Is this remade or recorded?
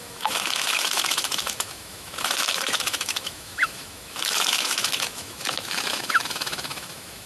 remade